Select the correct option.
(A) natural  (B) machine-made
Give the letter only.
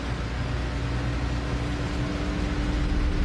A